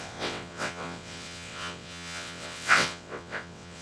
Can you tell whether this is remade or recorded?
remade